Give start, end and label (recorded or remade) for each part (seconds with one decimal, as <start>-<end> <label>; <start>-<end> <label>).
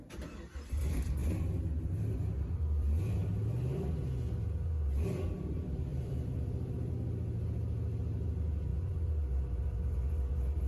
0.0-1.2 recorded; 1.2-3.9 remade; 3.9-5.9 recorded; 5.9-6.9 remade; 6.9-8.7 recorded; 8.7-9.4 remade; 9.4-10.7 recorded